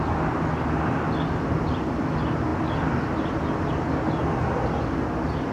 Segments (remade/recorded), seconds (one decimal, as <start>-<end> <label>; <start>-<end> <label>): 0.0-5.5 recorded